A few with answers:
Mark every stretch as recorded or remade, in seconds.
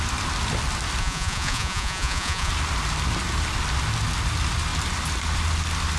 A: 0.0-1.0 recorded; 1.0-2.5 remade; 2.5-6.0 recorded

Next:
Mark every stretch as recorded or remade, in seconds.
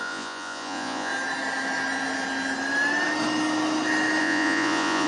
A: 0.0-1.1 remade; 1.1-4.2 recorded; 4.2-5.1 remade